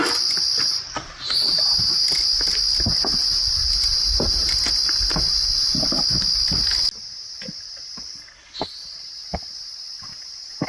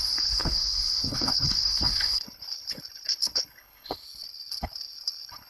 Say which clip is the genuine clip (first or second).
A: first